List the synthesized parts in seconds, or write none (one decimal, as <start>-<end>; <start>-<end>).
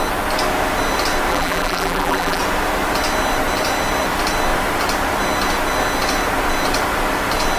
1.3-2.4